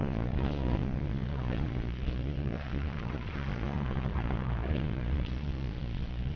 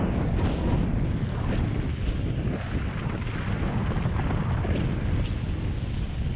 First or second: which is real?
second